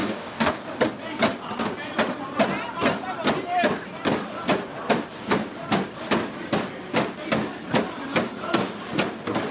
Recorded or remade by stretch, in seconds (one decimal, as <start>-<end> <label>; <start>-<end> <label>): 0.0-0.6 remade; 0.6-9.5 recorded